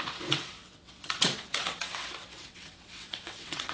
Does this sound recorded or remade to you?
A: remade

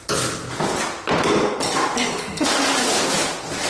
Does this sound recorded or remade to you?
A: recorded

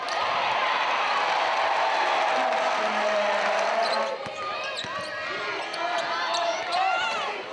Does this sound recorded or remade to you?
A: recorded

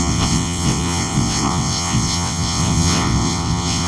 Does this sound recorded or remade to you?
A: remade